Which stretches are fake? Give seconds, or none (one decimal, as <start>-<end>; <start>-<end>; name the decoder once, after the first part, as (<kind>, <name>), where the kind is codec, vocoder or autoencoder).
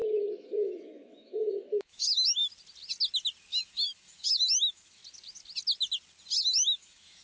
0.0-2.4 (autoencoder, DAC-VAE); 3.6-5.0; 6.4-7.2